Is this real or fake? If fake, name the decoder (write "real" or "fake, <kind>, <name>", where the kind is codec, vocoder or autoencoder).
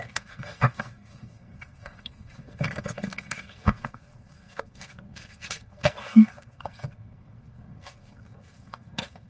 fake, codec, SNAC